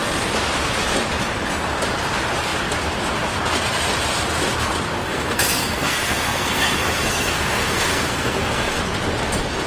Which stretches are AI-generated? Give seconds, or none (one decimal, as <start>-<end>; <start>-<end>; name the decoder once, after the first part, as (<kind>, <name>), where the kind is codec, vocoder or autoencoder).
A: 5.0-8.8 (codec, SNAC)